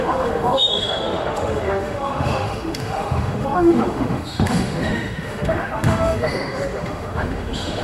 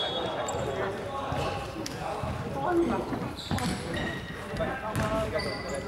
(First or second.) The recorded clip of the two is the second